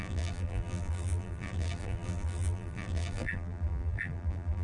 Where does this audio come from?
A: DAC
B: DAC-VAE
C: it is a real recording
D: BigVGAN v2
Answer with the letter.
D